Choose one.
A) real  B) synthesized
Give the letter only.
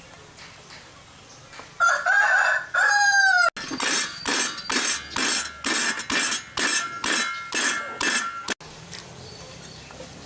A